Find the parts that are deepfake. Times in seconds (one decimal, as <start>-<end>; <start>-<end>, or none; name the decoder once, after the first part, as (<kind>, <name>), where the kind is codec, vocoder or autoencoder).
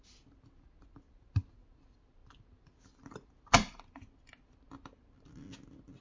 none